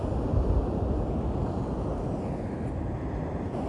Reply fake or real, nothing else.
real